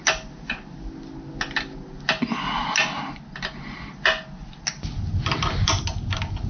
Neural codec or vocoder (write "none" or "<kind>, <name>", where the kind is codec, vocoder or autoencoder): none